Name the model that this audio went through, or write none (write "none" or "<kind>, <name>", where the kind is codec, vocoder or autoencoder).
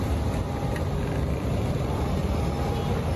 none